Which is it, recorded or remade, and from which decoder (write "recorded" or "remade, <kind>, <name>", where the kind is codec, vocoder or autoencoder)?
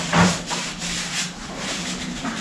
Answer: remade, vocoder, BigVGAN v2